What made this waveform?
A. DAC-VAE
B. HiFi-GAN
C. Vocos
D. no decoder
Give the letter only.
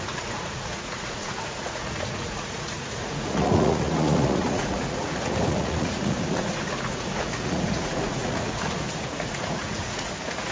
C